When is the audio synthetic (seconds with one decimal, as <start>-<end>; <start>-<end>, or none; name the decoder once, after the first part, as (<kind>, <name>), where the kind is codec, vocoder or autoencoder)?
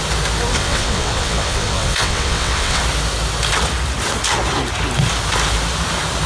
0.5-2.8 (vocoder, WaveNeXt)